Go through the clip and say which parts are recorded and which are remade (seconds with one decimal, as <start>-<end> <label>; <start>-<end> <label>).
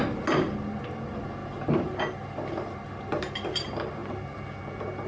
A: 0.0-5.1 recorded